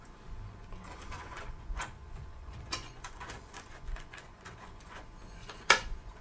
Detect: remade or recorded remade